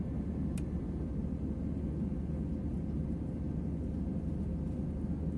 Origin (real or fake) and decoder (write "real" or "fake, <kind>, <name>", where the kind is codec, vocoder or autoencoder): real